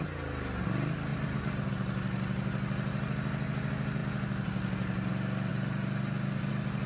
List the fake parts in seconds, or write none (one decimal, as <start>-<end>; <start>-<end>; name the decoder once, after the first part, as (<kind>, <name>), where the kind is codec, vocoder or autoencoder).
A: 1.1-1.7 (vocoder, BigVGAN v2); 5.5-6.5

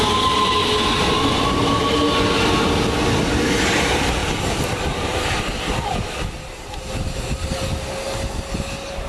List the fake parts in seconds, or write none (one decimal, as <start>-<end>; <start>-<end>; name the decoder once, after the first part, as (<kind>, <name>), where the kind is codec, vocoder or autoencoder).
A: none